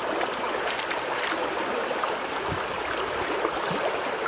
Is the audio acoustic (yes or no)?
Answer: yes